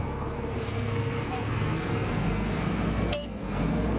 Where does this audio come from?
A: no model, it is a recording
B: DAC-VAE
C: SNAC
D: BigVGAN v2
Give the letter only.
C